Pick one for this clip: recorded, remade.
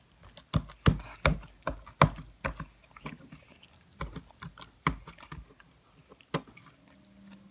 recorded